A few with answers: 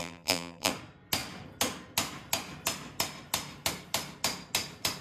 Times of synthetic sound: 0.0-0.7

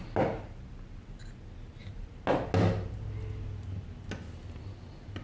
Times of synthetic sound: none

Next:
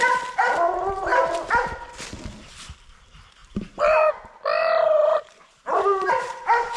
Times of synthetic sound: 3.4-4.1; 4.6-6.8

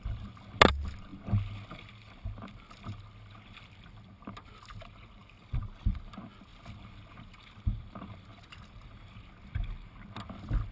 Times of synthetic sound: 5.2-6.1; 8.3-8.9

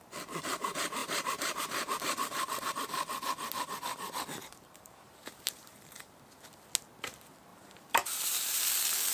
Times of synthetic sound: 1.0-2.7; 4.4-6.1; 7.5-8.7

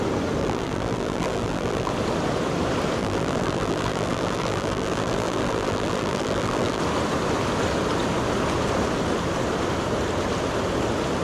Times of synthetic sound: 0.4-1.9; 3.0-6.8